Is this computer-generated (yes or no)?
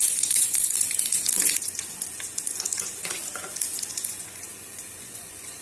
yes